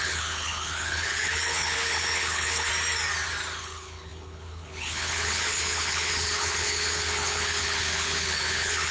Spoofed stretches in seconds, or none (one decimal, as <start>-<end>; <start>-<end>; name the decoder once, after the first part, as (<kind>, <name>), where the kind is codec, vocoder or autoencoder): 0.0-2.7 (codec, HILCodec); 3.6-8.9